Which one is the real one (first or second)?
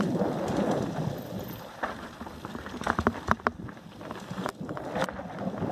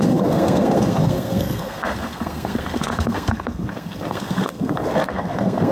first